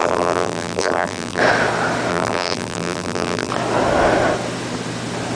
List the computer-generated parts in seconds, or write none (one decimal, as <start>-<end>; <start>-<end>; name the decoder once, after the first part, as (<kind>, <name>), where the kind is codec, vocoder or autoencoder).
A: 0.0-1.4 (vocoder, BigVGAN v2); 2.1-3.5